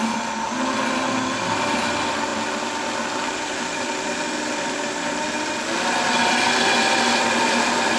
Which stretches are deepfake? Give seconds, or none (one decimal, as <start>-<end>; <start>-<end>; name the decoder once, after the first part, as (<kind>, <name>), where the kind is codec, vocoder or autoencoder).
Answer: none